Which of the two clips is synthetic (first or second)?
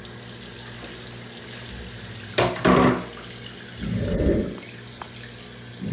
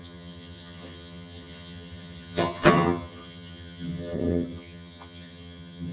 second